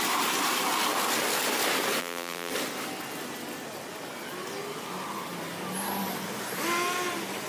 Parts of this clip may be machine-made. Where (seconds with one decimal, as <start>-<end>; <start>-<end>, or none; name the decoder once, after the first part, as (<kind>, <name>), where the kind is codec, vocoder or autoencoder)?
2.0-2.5 (vocoder, BigVGAN v2)